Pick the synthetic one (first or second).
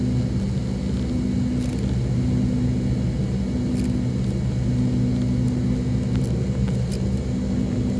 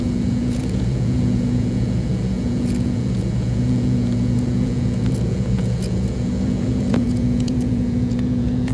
second